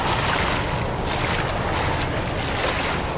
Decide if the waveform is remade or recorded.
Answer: recorded